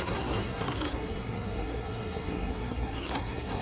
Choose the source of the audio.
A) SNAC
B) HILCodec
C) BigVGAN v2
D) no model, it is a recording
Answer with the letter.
A